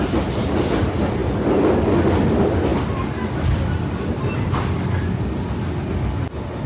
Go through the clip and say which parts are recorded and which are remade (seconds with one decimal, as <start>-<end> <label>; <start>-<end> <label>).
0.0-6.7 recorded